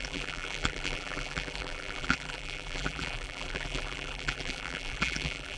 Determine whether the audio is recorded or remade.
remade